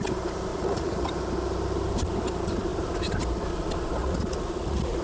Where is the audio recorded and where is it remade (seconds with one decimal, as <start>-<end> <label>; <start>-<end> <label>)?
0.0-0.5 recorded; 0.5-1.1 remade; 1.1-4.0 recorded; 4.0-5.0 remade